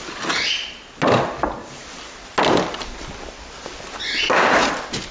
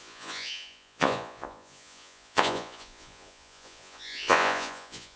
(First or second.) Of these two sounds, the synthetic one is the second